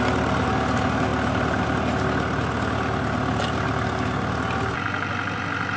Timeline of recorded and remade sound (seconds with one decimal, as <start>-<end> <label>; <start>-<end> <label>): 0.0-5.8 recorded